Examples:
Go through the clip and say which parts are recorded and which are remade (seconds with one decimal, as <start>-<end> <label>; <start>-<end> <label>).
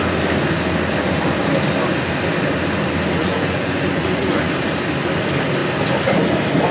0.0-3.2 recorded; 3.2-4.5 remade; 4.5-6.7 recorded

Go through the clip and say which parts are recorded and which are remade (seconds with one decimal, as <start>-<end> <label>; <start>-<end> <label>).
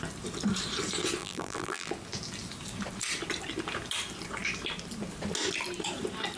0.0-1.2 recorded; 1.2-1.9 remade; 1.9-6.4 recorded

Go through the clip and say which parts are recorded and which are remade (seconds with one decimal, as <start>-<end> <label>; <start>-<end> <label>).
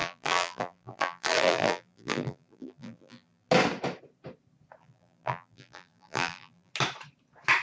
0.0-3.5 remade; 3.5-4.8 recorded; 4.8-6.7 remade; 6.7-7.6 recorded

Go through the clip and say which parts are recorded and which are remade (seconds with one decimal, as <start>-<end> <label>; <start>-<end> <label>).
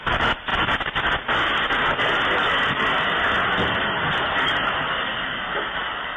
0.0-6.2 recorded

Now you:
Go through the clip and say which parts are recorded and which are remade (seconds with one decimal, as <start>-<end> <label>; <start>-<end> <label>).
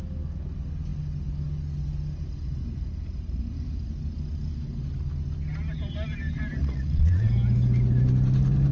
0.0-6.6 recorded; 6.6-7.3 remade; 7.3-8.7 recorded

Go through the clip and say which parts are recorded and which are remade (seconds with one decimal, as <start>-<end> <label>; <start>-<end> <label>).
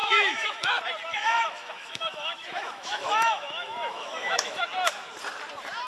0.0-0.7 remade; 0.7-1.1 recorded; 1.1-4.6 remade; 4.6-5.9 recorded